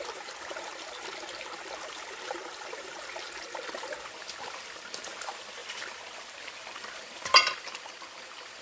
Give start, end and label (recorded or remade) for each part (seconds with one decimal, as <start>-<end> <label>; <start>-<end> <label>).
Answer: 0.0-8.6 remade